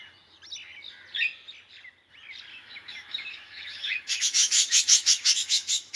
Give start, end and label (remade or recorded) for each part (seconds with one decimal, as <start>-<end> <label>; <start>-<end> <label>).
0.0-2.5 recorded; 2.5-6.0 remade